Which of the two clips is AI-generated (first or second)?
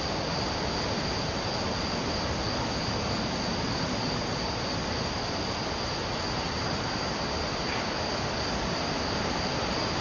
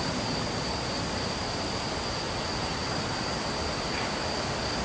second